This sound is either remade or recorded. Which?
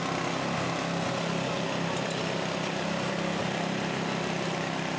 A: recorded